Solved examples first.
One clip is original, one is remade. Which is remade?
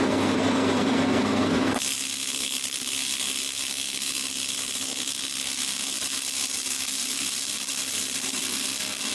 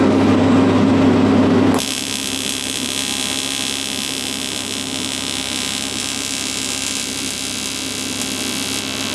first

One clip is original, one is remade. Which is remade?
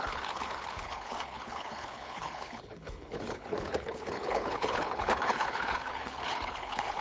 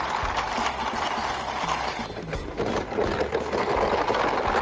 first